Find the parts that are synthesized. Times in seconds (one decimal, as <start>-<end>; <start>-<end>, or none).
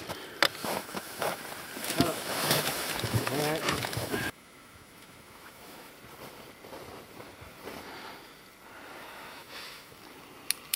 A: 0.6-1.4; 1.8-5.9; 9.0-10.0